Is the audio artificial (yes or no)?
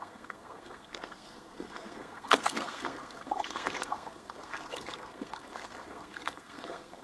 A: yes